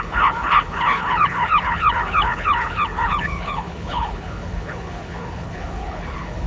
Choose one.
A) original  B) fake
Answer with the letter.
B